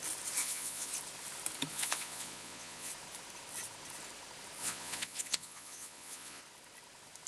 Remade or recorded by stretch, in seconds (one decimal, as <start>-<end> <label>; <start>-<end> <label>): 0.0-0.4 recorded; 0.4-0.9 remade; 0.9-1.7 recorded; 1.7-2.9 remade; 2.9-4.6 recorded; 4.6-6.4 remade; 6.4-7.3 recorded